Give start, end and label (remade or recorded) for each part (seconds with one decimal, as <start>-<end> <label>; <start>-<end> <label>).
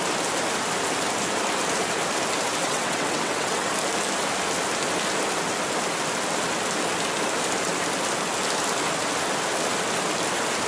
0.0-2.6 recorded; 2.6-3.7 remade; 3.7-10.7 recorded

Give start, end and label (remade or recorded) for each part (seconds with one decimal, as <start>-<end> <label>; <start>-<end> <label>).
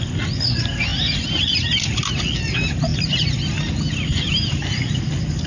0.0-5.5 recorded